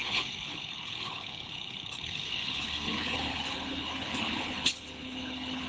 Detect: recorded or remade remade